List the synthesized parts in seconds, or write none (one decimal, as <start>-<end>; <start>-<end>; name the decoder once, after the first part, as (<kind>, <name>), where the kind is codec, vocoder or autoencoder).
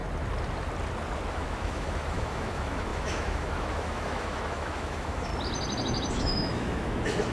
1.3-5.3 (autoencoder, DAC-VAE); 6.1-7.3